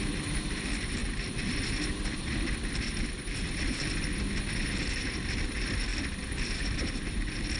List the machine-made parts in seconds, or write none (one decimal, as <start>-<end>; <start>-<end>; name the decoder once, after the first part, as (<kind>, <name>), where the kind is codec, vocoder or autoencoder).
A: 0.0-7.6 (vocoder, BigVGAN v2)